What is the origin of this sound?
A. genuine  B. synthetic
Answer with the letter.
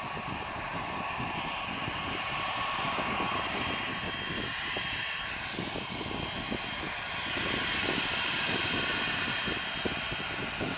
B